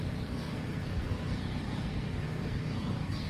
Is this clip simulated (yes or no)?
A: yes